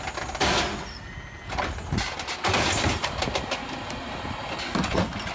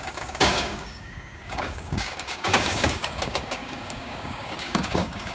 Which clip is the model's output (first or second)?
second